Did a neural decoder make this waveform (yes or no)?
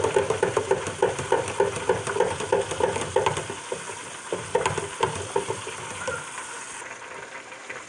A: no